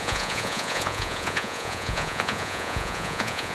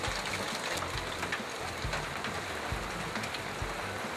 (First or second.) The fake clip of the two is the first